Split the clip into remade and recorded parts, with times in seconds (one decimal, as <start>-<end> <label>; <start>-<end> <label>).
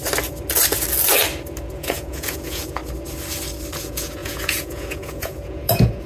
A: 0.0-1.7 recorded; 1.7-2.8 remade; 2.8-3.8 recorded; 3.8-6.1 remade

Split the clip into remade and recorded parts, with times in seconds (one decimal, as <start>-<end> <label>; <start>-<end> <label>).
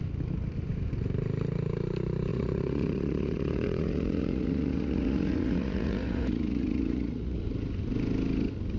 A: 0.0-2.3 recorded; 2.3-7.4 remade; 7.4-8.8 recorded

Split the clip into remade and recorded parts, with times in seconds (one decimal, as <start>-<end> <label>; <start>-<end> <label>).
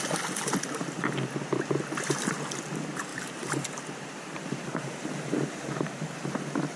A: 0.0-3.1 recorded; 3.1-5.6 remade; 5.6-6.8 recorded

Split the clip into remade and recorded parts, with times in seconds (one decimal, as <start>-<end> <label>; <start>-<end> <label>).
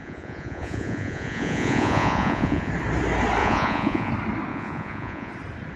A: 0.0-2.7 remade; 2.7-3.4 recorded; 3.4-4.1 remade; 4.1-4.5 recorded; 4.5-5.3 remade; 5.3-5.8 recorded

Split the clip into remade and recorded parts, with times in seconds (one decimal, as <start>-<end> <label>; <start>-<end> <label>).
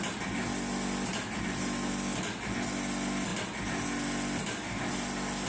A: 0.0-5.5 recorded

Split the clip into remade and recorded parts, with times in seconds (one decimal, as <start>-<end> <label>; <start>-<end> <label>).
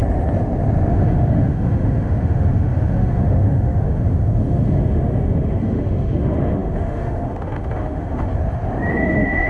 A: 0.0-0.9 recorded; 0.9-8.3 remade; 8.3-8.9 recorded; 8.9-9.5 remade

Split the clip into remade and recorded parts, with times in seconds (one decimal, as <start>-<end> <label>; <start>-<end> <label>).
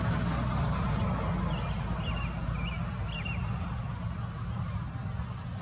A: 0.0-5.6 recorded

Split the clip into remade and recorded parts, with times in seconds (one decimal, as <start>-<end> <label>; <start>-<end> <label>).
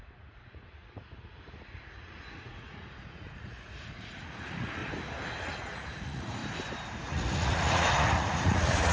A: 0.0-4.8 remade; 4.8-5.4 recorded; 5.4-6.4 remade; 6.4-7.0 recorded; 7.0-8.9 remade